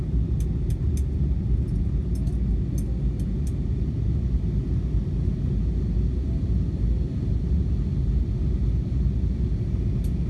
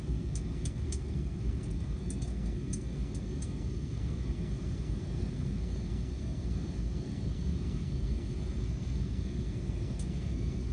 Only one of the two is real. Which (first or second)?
first